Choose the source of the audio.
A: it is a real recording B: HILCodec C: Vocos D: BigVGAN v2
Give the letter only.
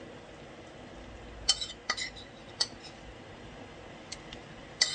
A